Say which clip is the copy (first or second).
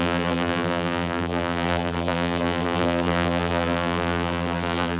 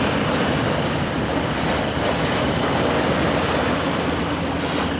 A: first